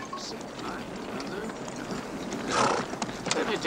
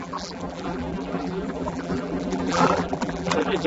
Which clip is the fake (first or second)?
second